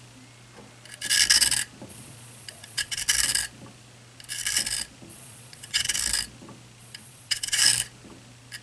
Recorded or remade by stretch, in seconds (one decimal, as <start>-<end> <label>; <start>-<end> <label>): 0.0-1.9 recorded; 1.9-3.0 remade; 3.0-5.1 recorded; 5.1-5.9 remade; 5.9-6.8 recorded; 6.8-7.6 remade; 7.6-8.6 recorded